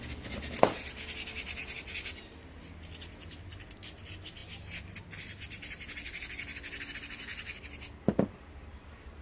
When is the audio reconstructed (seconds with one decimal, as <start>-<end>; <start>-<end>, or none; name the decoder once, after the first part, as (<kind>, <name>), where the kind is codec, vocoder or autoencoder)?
none

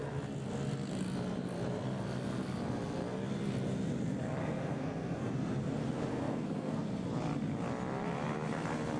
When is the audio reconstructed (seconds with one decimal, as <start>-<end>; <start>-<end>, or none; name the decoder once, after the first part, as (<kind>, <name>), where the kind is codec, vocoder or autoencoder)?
4.4-5.3 (codec, SNAC); 6.1-7.0

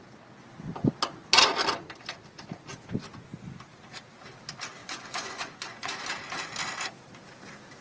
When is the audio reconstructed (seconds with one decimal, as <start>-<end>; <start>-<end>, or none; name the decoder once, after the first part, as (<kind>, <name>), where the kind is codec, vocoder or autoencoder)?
4.8-5.9 (vocoder, Vocos)

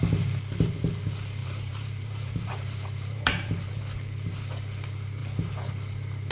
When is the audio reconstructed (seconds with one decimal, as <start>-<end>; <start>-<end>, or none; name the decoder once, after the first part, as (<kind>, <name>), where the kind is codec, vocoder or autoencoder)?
1.4-3.8 (vocoder, BigVGAN v2)

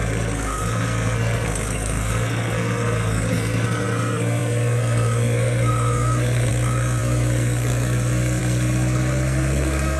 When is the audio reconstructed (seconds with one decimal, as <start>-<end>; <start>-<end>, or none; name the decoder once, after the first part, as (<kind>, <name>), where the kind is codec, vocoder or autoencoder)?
0.0-10.0 (codec, SNAC)

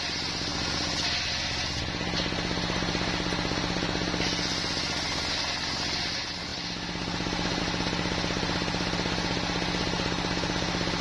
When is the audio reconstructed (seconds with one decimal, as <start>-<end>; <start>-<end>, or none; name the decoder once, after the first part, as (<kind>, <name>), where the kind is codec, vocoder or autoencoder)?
none